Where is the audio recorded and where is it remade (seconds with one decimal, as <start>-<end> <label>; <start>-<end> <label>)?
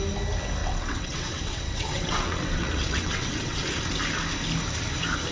0.0-0.6 recorded; 0.6-3.8 remade; 3.8-5.3 recorded